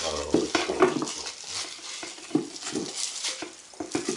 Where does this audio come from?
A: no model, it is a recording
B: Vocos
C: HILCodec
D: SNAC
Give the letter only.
A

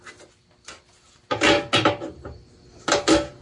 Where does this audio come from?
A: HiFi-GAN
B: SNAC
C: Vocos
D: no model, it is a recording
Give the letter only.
D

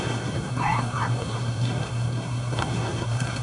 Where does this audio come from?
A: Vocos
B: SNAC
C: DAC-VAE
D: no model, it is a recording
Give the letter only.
B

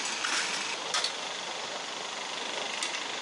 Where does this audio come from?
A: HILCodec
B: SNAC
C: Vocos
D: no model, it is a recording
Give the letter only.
D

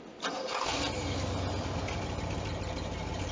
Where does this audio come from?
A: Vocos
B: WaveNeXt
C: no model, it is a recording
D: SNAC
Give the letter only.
C